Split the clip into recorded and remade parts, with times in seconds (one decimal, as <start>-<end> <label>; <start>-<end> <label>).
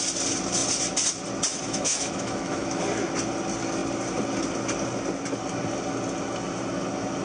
0.0-1.5 recorded; 1.5-2.8 remade; 2.8-7.2 recorded